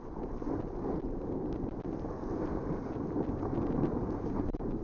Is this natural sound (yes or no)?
yes